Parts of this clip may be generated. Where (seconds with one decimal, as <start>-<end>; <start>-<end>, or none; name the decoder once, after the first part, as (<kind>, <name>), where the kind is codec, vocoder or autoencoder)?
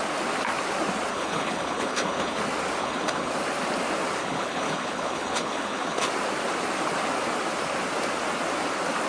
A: 1.1-2.4 (codec, HILCodec); 2.8-3.3; 4.2-6.1